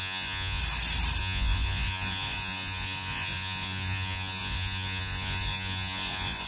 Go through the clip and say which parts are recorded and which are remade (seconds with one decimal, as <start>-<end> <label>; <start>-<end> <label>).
0.0-0.6 remade; 0.6-1.2 recorded; 1.2-6.5 remade